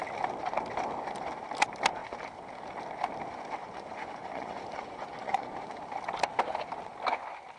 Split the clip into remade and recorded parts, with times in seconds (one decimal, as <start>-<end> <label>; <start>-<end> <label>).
0.0-3.6 recorded; 3.6-5.8 remade; 5.8-7.6 recorded